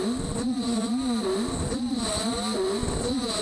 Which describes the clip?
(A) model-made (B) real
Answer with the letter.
B